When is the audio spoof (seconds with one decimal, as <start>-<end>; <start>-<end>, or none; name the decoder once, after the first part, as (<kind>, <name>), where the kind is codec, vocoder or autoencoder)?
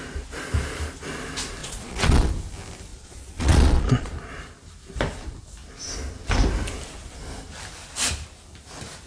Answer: 1.6-2.3 (vocoder, Vocos); 2.9-4.1